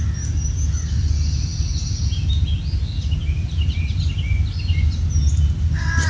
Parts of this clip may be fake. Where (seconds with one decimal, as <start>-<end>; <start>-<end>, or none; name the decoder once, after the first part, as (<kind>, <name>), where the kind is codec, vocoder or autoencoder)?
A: none